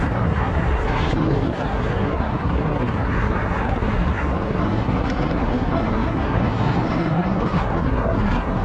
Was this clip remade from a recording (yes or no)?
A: yes